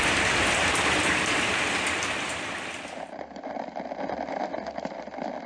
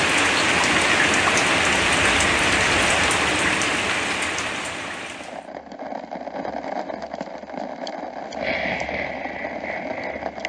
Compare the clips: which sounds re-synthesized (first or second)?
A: first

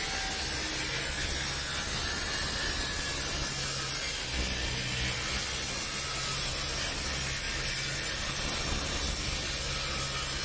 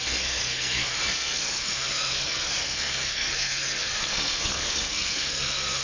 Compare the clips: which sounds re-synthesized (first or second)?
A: second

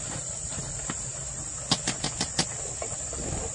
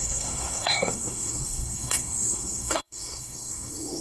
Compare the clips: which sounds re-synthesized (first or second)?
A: second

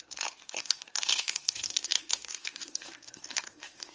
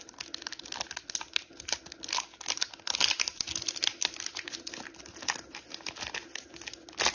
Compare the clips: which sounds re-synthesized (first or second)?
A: first